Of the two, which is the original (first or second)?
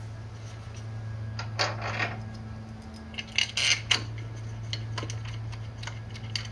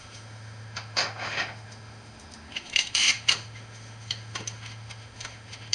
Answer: first